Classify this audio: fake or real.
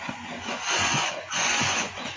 fake